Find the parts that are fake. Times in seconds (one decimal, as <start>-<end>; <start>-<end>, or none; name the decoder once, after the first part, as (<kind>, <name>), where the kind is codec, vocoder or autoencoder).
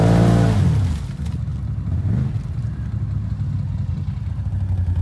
none